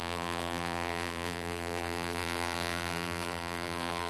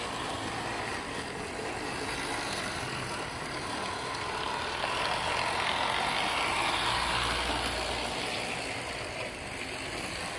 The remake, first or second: first